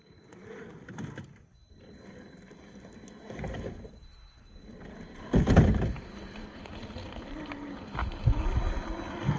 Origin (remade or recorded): recorded